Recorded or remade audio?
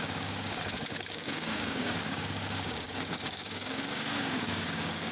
remade